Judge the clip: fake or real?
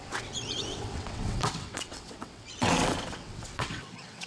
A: fake